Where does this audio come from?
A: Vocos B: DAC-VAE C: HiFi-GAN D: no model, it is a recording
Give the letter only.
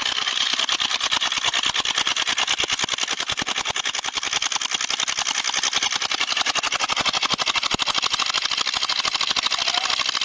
D